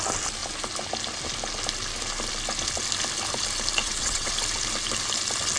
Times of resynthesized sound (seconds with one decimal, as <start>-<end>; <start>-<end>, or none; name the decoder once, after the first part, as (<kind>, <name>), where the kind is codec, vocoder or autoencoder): 3.8-4.3 (vocoder, WaveNeXt)